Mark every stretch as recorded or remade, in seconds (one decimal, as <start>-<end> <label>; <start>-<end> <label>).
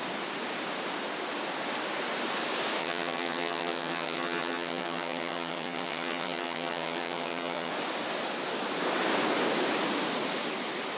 0.0-2.8 recorded; 2.8-7.7 remade; 7.7-11.0 recorded